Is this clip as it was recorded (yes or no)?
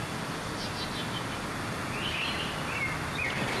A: yes